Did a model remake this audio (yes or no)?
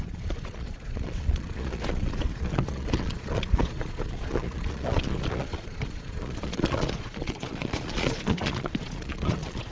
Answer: yes